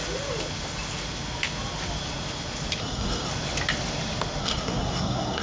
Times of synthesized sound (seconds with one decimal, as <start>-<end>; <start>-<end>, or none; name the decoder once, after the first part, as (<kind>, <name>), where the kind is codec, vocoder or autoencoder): 2.8-3.3 (codec, SNAC); 4.4-5.4